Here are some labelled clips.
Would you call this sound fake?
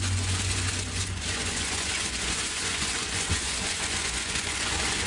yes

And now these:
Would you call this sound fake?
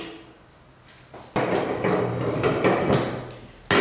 no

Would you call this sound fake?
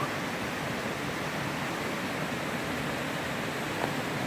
no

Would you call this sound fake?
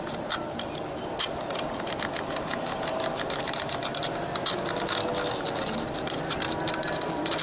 no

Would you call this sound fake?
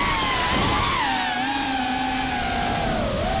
no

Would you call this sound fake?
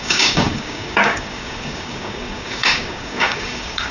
yes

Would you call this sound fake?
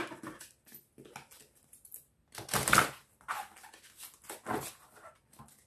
no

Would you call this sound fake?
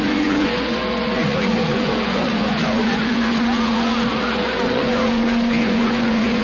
yes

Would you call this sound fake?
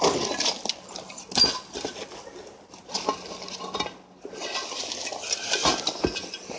no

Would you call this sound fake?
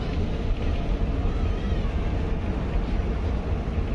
no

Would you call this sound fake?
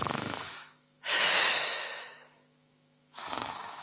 yes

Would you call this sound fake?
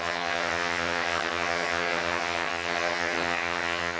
yes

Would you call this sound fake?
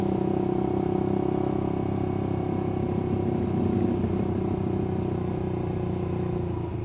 no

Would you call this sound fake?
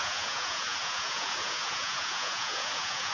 yes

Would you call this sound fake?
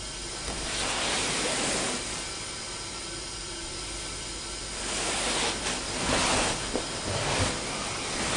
no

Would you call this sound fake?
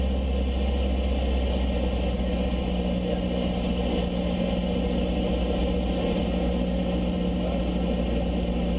no